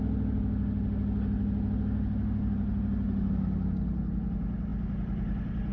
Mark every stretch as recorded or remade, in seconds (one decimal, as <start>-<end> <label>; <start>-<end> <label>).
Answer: 0.0-5.7 recorded